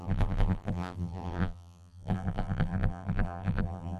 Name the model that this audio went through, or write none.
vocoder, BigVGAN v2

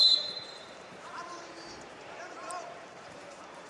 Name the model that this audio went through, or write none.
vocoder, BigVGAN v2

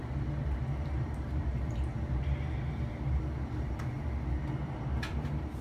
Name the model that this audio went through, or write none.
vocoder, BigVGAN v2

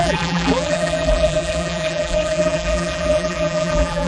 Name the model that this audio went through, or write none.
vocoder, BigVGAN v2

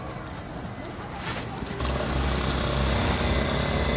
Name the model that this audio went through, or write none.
none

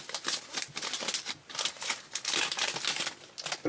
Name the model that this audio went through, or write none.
none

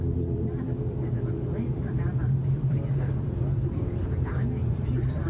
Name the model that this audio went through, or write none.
vocoder, BigVGAN v2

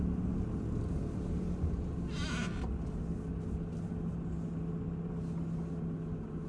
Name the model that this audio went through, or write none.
none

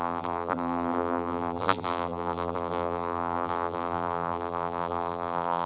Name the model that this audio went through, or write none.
vocoder, BigVGAN v2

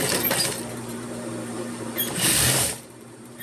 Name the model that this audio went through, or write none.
vocoder, BigVGAN v2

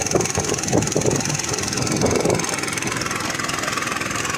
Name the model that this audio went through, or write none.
vocoder, BigVGAN v2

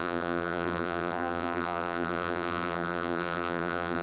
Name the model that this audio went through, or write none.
vocoder, BigVGAN v2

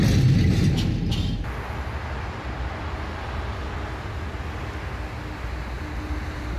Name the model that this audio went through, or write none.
none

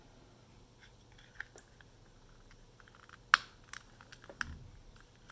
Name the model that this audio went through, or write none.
none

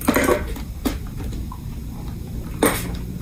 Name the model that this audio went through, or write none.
vocoder, BigVGAN v2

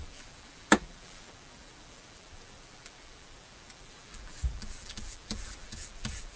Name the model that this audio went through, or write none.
vocoder, BigVGAN v2